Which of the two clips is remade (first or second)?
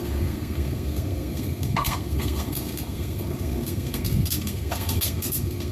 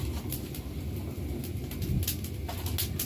first